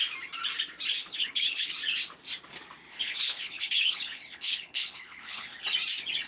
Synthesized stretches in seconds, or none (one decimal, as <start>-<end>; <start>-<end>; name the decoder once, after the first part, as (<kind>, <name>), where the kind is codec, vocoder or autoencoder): 1.0-1.7 (codec, HILCodec); 2.9-5.6